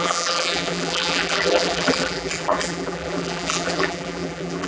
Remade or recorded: remade